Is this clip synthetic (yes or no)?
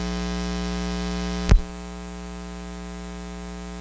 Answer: no